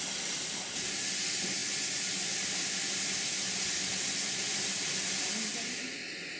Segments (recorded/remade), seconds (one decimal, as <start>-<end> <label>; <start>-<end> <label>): 0.0-6.4 recorded